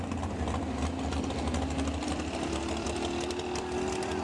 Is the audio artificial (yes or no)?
yes